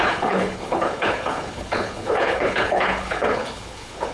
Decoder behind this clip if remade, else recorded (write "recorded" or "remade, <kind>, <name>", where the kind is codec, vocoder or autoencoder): remade, codec, HILCodec